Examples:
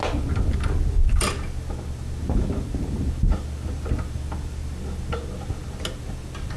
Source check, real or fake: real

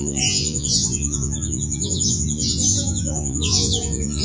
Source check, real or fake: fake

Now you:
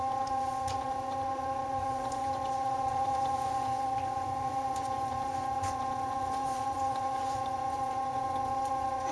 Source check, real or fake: fake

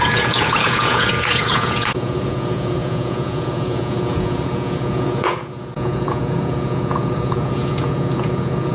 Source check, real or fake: fake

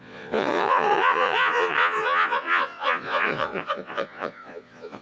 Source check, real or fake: fake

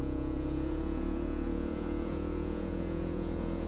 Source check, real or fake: fake